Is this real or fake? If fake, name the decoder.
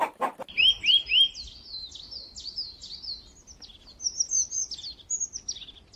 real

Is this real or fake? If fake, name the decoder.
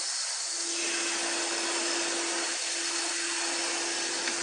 real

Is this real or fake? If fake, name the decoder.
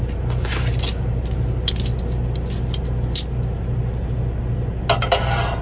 real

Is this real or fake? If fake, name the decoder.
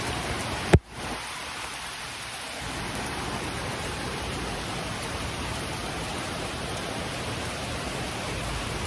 fake, vocoder, BigVGAN v2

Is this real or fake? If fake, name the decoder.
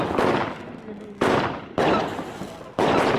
real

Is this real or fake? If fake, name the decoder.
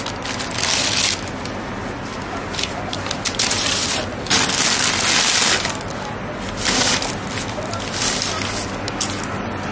real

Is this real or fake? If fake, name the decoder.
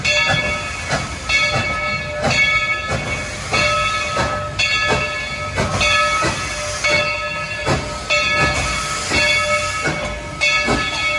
real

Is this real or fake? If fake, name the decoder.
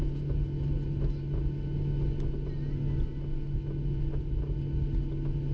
real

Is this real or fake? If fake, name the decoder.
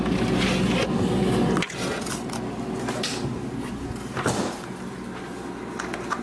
real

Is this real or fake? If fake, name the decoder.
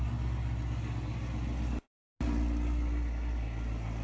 real